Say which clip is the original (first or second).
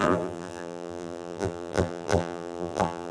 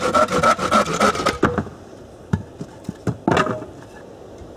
second